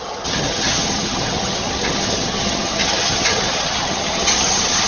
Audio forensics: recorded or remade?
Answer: remade